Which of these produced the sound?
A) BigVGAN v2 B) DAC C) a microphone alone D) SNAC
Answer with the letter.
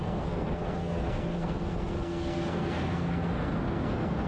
D